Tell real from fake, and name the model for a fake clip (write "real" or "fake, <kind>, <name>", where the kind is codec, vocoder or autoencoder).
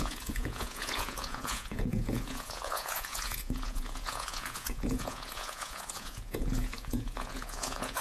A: fake, vocoder, Vocos